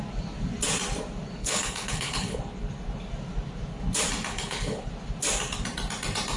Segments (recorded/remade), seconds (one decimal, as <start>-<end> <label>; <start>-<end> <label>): 0.0-1.4 recorded; 1.4-2.4 remade; 2.4-4.3 recorded; 4.3-4.9 remade; 4.9-6.4 recorded